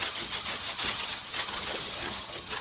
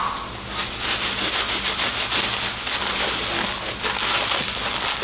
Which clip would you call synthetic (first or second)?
first